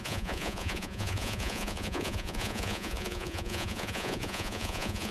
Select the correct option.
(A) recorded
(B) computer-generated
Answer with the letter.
B